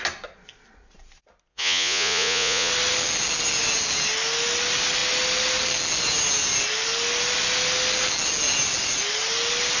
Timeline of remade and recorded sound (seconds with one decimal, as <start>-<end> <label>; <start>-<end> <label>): 0.0-1.5 recorded; 1.5-2.7 remade; 2.7-9.8 recorded